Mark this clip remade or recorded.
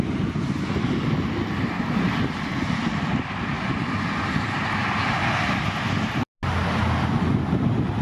recorded